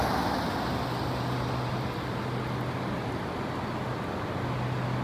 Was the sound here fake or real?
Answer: real